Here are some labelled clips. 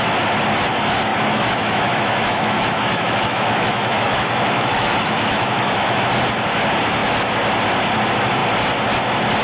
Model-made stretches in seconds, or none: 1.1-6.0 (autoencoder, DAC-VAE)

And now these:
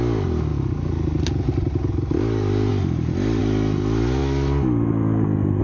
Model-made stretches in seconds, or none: none

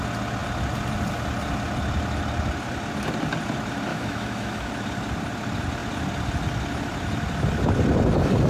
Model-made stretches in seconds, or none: 3.9-4.7 (autoencoder, DAC-VAE)